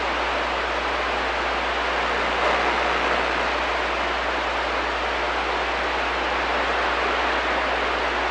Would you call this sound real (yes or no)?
yes